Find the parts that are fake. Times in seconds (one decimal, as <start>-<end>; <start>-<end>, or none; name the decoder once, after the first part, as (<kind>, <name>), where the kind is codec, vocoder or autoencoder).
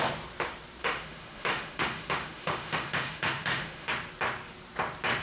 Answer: 0.8-3.9 (autoencoder, DAC-VAE)